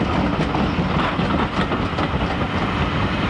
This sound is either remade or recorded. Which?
recorded